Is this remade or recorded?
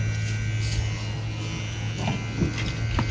recorded